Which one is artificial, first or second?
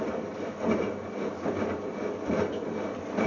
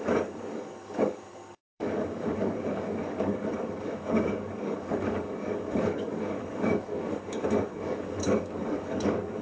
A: second